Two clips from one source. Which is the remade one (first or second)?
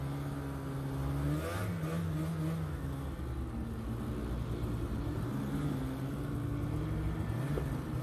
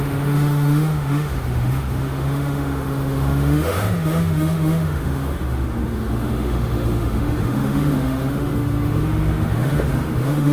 second